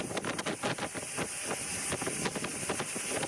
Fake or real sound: real